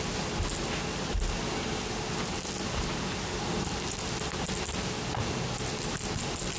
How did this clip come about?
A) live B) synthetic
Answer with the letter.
A